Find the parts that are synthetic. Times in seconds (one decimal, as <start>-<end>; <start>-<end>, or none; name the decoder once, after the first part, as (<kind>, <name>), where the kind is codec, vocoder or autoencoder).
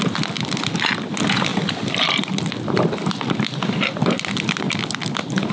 1.5-4.8 (vocoder, BigVGAN v2)